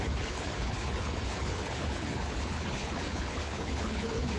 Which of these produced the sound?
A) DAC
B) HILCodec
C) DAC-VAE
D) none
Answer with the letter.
B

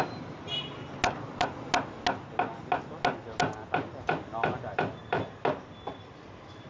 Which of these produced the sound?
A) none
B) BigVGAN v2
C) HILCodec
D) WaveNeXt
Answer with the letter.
A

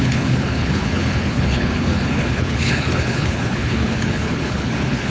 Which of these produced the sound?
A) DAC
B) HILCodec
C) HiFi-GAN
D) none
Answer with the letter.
B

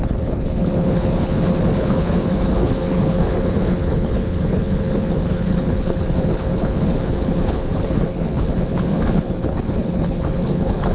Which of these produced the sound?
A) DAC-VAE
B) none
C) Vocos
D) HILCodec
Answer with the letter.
D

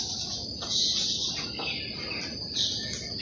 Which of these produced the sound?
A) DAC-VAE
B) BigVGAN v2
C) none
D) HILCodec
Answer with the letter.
C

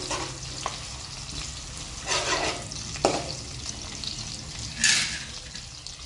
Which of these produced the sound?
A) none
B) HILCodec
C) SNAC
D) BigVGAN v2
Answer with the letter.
A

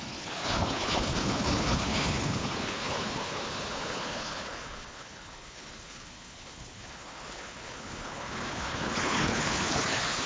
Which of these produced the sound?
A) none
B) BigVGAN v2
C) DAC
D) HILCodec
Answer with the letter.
D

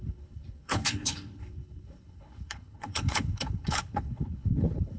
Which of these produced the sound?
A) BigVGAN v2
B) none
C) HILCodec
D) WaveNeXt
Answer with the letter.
C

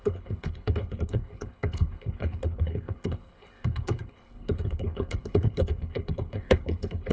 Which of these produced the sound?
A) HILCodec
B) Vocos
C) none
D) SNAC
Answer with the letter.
A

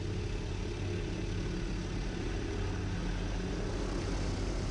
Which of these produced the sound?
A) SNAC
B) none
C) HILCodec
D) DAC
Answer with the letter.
B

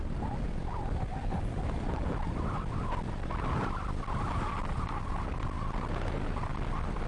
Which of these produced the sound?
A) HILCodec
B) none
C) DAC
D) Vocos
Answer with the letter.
B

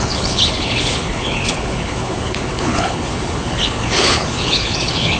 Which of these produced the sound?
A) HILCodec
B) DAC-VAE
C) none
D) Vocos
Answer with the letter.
A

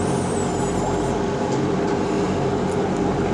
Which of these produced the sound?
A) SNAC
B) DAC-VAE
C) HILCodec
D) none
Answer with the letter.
D